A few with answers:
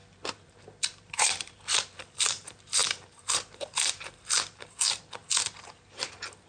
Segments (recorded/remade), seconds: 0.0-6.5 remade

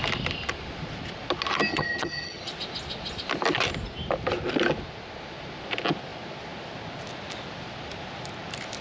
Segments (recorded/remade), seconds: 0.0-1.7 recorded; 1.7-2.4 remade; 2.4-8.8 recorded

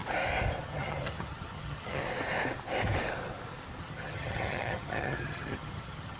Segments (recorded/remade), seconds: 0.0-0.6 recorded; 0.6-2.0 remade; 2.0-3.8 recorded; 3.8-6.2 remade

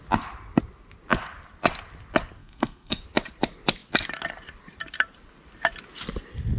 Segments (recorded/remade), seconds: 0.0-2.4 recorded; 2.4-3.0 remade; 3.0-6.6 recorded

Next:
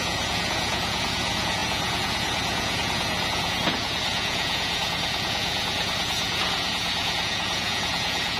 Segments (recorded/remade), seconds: 0.0-8.4 remade

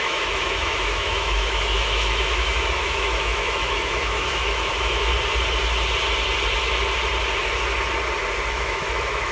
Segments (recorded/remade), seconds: 0.0-5.1 remade; 5.1-8.5 recorded; 8.5-9.3 remade

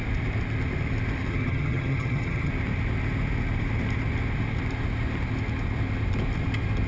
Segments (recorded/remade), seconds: 0.0-1.3 recorded; 1.3-2.5 remade; 2.5-6.9 recorded

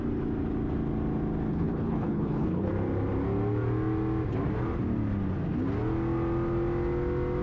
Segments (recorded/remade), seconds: 0.0-1.5 recorded; 1.5-2.7 remade; 2.7-7.4 recorded